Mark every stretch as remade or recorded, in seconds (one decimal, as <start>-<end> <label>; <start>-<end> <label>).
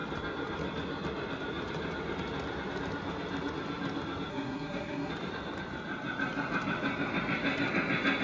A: 0.0-4.3 recorded; 4.3-5.1 remade; 5.1-8.2 recorded